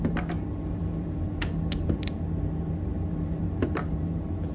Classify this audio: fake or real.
fake